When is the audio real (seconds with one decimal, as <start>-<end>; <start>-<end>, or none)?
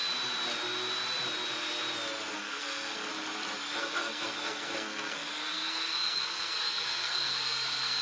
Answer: 0.0-2.3; 3.1-3.8